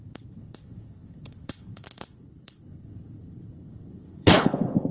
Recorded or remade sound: remade